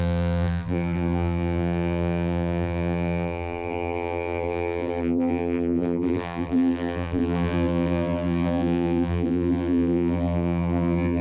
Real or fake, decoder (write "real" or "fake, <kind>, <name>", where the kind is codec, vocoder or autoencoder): fake, vocoder, BigVGAN v2